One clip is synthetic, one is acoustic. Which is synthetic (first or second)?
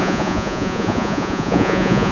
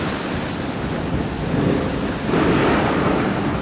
first